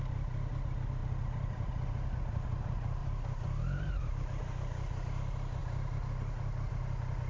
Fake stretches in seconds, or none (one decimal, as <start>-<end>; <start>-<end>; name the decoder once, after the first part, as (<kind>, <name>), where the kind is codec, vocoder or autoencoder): 1.0-1.9 (vocoder, BigVGAN v2); 3.0-4.3